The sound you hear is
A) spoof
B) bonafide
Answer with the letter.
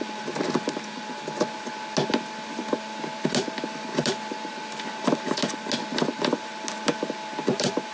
B